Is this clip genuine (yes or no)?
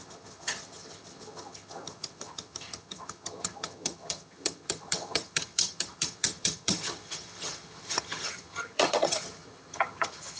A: no